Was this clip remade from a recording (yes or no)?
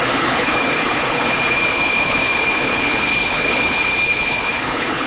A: yes